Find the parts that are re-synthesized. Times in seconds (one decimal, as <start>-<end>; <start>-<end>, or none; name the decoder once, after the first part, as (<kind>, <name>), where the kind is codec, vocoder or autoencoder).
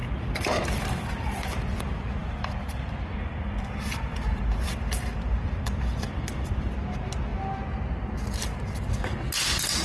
0.0-1.8 (vocoder, BigVGAN v2); 2.2-6.7